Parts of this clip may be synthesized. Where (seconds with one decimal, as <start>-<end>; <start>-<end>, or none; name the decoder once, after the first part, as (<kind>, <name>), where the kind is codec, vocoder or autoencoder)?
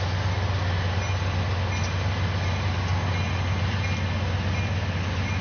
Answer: none